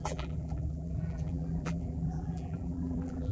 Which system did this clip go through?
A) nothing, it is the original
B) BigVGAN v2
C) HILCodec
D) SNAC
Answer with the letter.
B